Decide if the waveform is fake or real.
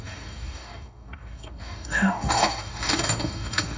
fake